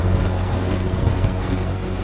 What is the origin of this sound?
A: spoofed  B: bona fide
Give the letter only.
A